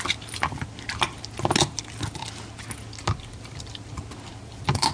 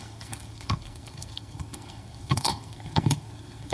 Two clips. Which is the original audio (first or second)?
first